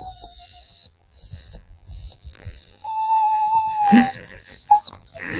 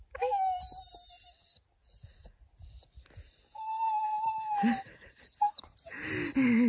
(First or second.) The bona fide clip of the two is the second